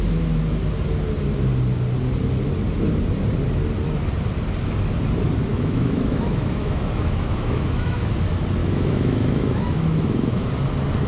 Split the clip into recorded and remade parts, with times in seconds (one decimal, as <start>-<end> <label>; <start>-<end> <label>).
0.0-5.5 recorded; 5.5-8.1 remade; 8.1-8.6 recorded; 8.6-10.5 remade; 10.5-11.1 recorded